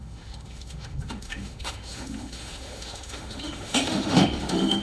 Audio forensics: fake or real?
fake